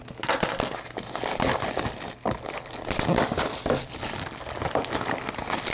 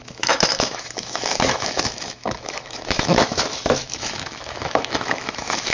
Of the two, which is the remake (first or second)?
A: second